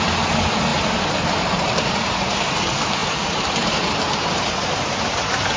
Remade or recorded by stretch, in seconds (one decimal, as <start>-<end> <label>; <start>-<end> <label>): 0.0-5.6 remade